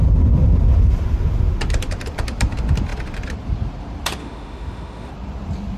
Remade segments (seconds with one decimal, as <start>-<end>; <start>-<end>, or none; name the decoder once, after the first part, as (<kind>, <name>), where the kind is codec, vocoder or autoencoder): 4.2-5.1 (autoencoder, DAC-VAE)

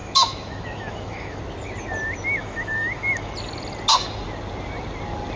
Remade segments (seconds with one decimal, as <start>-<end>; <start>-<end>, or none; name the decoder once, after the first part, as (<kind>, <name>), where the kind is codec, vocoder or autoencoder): 0.0-1.4 (autoencoder, DAC-VAE); 2.4-3.3

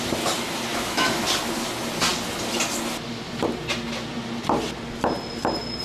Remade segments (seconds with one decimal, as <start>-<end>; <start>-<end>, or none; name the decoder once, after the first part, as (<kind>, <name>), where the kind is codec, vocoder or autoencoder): 0.7-1.2 (autoencoder, DAC-VAE)

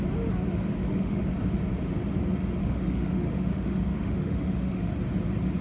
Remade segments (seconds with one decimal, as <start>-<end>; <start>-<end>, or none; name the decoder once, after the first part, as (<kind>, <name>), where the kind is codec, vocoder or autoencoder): 0.8-1.3 (autoencoder, DAC-VAE); 2.6-4.9

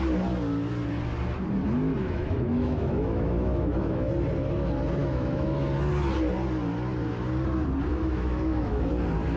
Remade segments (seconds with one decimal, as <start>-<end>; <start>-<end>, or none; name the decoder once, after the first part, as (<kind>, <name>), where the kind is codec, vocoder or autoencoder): 2.0-4.1 (autoencoder, DAC-VAE); 5.0-5.6; 7.9-8.9

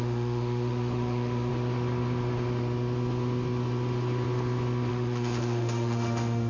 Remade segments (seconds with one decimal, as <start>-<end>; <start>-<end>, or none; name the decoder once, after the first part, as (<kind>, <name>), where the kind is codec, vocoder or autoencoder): 0.0-1.5 (autoencoder, DAC-VAE); 4.9-6.5

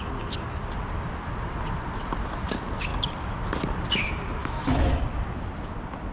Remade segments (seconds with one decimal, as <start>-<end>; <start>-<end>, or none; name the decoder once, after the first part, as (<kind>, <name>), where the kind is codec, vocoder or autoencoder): 4.4-5.0 (autoencoder, DAC-VAE)